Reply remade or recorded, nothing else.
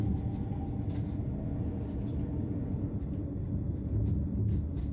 recorded